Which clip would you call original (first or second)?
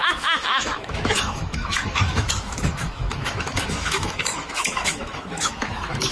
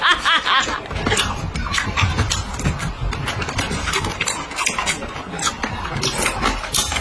second